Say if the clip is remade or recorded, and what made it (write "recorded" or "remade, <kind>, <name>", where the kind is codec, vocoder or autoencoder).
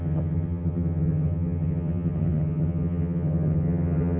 remade, vocoder, HiFi-GAN